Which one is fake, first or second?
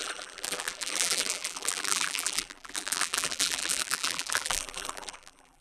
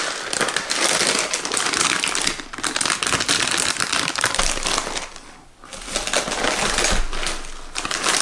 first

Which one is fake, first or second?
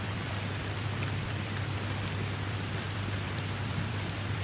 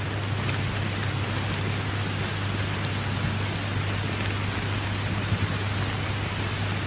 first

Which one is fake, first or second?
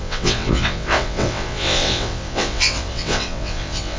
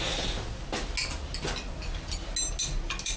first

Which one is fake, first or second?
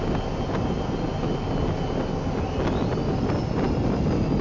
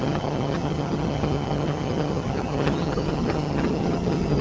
second